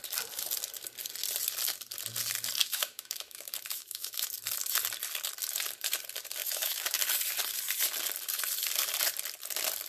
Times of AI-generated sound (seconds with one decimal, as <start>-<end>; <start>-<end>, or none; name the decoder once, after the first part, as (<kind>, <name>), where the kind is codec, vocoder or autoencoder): 2.6-4.3 (autoencoder, DAC-VAE); 6.4-7.0